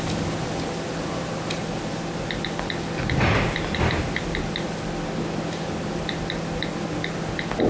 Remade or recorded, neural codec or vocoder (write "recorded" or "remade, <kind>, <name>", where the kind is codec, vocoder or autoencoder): recorded